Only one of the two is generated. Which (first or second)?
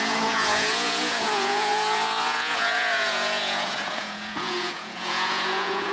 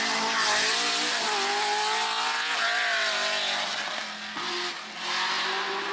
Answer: first